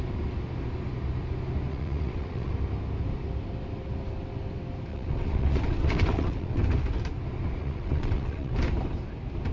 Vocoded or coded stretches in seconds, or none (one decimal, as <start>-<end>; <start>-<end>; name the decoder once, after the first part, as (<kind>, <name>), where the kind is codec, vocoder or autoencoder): 1.7-2.5 (vocoder, WaveNeXt); 4.9-6.6; 7.6-8.5